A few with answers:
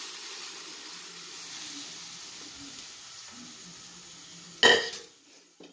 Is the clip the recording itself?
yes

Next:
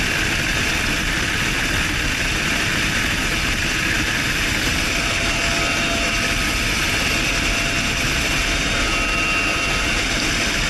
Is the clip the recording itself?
yes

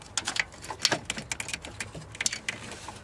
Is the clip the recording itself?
yes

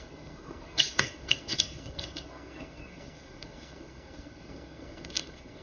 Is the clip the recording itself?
no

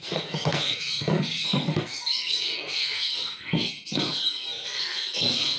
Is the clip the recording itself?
no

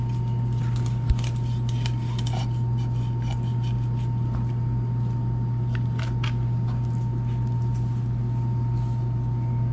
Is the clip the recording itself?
yes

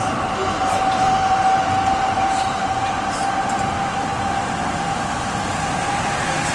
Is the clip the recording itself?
yes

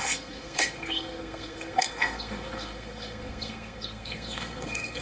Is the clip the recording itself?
no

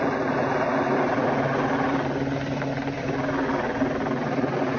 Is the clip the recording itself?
yes